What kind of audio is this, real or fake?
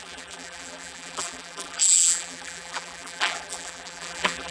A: fake